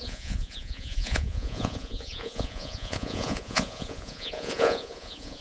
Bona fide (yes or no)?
no